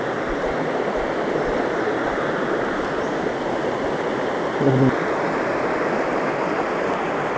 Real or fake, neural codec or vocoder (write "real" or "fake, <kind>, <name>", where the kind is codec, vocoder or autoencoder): real